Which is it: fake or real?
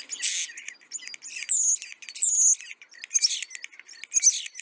real